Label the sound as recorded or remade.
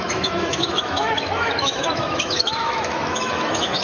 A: remade